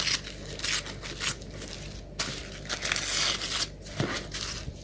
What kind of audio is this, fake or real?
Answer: real